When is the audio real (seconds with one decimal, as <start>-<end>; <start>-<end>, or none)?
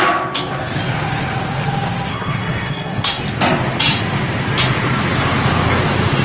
0.0-2.1; 3.2-6.2